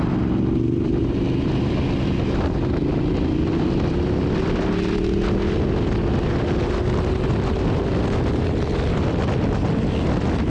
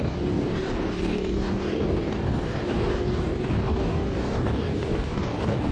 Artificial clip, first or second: second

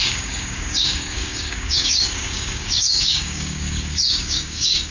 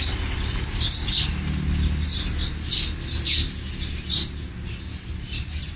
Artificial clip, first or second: first